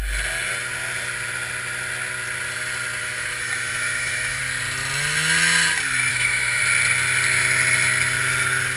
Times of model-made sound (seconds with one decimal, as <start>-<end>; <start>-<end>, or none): 3.0-4.4; 6.1-6.6